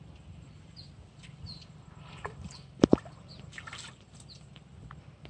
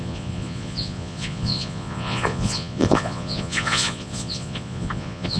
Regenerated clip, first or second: second